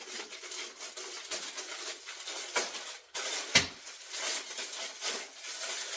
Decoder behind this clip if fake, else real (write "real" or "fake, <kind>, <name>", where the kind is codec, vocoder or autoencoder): real